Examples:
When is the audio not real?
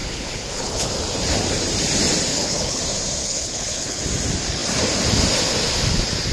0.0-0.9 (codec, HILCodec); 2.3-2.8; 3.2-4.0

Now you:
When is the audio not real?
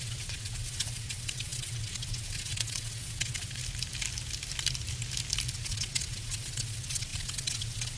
0.0-3.6 (vocoder, WaveNeXt); 5.5-8.0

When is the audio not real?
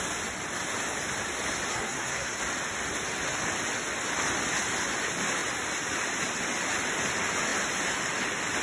1.7-2.4 (codec, SNAC)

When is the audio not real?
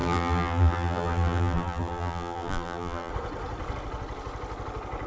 0.0-3.1 (vocoder, BigVGAN v2)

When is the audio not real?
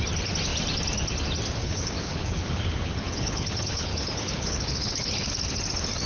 1.6-5.3 (codec, HILCodec)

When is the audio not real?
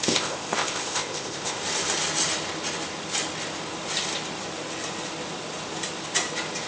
0.0-1.6 (codec, ZipCodec)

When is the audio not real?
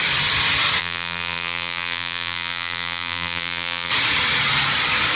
0.8-3.9 (vocoder, BigVGAN v2)